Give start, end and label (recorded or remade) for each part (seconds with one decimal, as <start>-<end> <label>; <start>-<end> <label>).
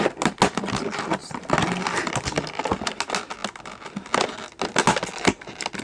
0.0-5.8 recorded